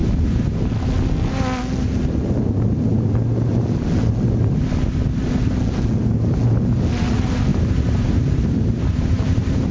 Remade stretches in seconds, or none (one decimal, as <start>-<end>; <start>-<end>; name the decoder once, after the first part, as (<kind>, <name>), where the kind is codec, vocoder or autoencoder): 0.0-0.7 (vocoder, BigVGAN v2); 7.5-9.7